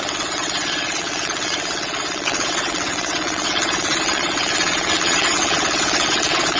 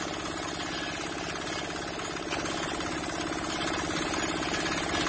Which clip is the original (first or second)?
second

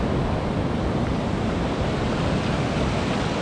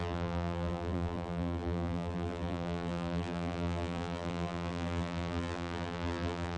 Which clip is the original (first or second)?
first